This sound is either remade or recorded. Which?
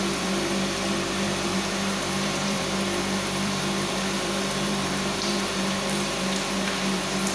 remade